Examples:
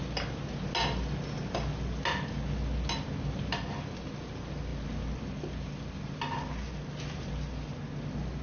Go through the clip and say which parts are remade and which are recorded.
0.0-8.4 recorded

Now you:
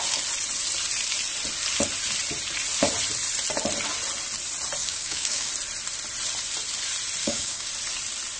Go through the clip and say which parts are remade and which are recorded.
0.0-4.8 recorded; 4.8-5.5 remade; 5.5-7.2 recorded; 7.2-7.7 remade; 7.7-8.4 recorded